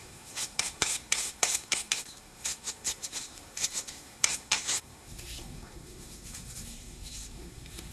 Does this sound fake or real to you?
fake